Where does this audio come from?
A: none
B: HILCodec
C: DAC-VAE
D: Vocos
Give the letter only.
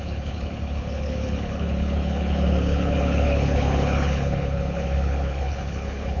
B